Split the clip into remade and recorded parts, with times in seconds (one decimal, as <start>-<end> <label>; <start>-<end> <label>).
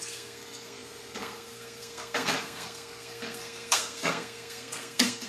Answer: 0.0-5.3 remade